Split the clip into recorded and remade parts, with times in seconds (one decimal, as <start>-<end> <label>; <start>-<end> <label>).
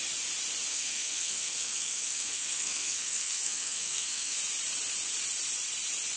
0.0-0.7 recorded; 0.7-4.4 remade; 4.4-6.2 recorded